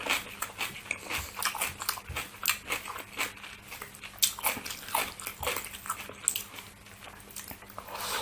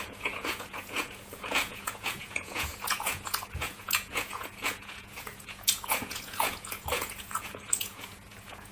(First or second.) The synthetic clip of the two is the second